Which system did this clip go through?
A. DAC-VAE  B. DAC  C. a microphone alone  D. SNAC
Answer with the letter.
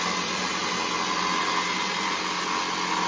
C